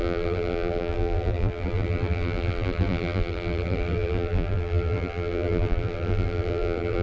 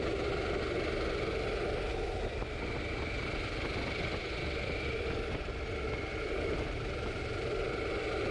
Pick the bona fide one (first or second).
second